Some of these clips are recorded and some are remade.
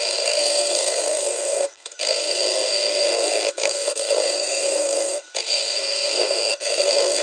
remade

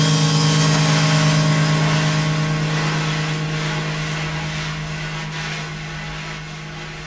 recorded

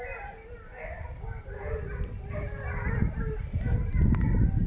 recorded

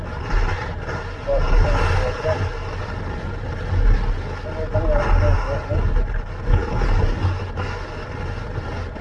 recorded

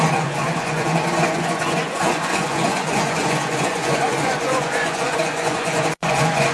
remade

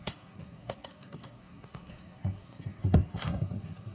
remade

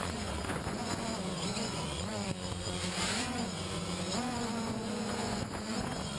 remade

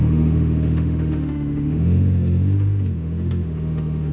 remade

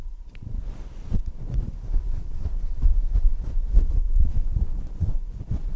remade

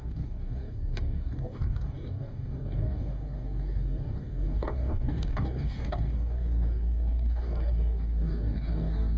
remade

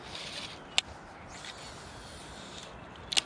recorded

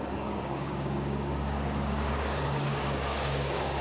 remade